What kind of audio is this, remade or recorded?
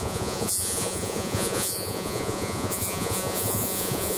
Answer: remade